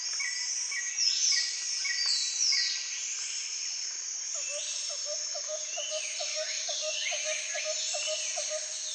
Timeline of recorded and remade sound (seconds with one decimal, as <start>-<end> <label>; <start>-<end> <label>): 0.0-6.3 recorded; 6.3-7.6 remade; 7.6-8.9 recorded